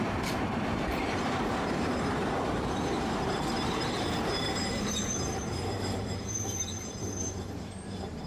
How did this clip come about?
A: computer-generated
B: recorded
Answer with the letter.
A